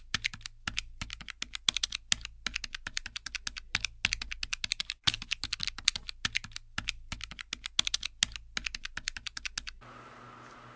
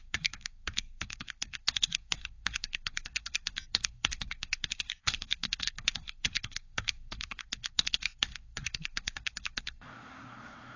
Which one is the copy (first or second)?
second